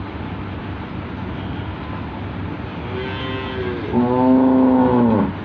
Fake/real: real